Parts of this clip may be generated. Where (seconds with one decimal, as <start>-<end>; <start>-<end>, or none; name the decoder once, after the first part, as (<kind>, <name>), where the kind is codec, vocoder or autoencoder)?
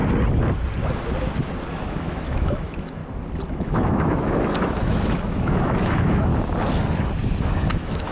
1.7-3.0 (autoencoder, DAC-VAE); 3.5-6.3; 7.4-8.1